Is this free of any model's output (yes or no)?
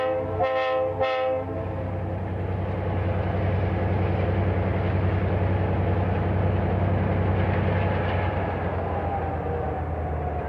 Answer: yes